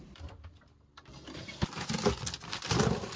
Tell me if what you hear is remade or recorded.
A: recorded